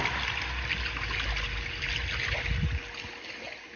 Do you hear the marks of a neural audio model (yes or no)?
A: no